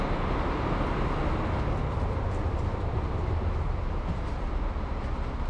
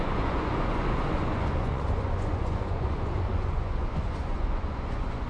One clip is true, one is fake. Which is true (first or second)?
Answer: first